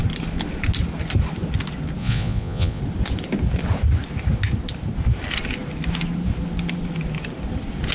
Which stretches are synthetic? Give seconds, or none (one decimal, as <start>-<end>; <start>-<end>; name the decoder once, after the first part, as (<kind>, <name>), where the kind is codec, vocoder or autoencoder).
2.0-2.8 (vocoder, Vocos)